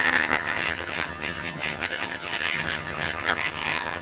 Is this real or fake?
fake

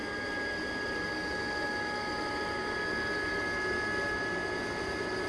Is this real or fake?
real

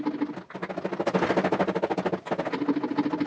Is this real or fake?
real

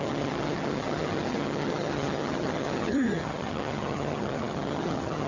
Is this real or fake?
fake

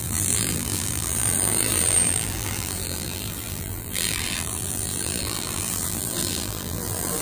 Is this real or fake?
fake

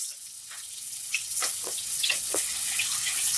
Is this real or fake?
fake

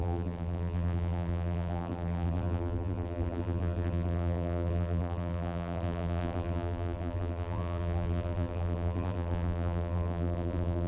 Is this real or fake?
fake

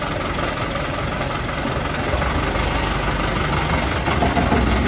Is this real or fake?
real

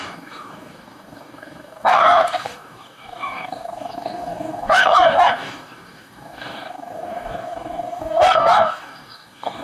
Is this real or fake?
fake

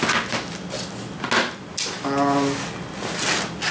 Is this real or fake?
real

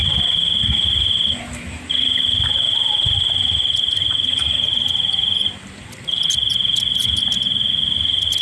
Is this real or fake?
real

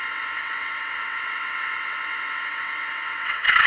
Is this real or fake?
fake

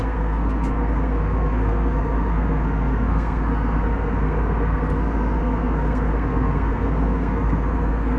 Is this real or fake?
fake